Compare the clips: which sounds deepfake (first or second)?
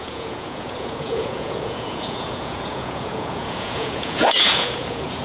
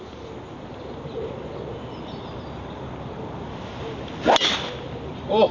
first